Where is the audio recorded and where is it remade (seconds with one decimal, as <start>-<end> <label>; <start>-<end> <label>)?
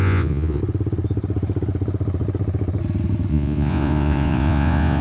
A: 0.0-0.6 remade; 0.6-3.3 recorded; 3.3-5.0 remade